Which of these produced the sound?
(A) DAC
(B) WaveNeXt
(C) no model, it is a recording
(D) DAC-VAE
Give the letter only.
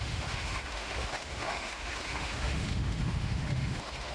D